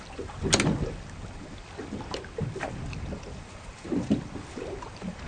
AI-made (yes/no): no